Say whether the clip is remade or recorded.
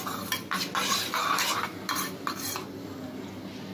recorded